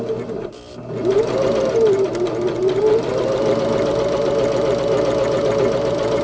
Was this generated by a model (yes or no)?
no